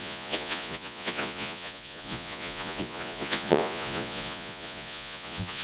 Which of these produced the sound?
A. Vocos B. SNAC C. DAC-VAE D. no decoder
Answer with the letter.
A